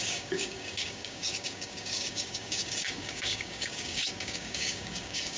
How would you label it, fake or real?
fake